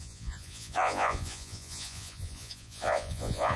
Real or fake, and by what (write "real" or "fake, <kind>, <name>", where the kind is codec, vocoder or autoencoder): fake, vocoder, Vocos